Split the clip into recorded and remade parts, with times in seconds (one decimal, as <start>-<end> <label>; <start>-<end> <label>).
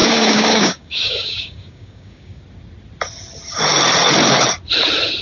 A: 0.0-2.4 remade; 2.4-5.2 recorded